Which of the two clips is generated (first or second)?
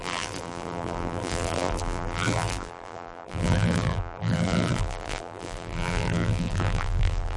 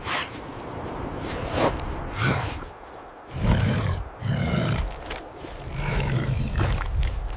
first